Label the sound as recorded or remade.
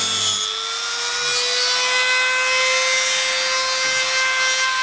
recorded